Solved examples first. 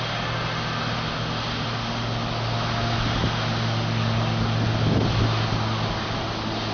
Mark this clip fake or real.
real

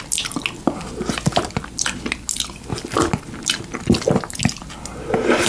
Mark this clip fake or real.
real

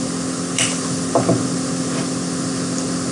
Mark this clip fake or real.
real